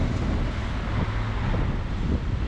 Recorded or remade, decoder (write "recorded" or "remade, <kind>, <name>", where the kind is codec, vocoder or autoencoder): recorded